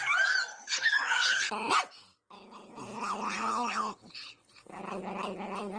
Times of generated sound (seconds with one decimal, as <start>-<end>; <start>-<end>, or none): 0.5-1.7; 3.4-4.5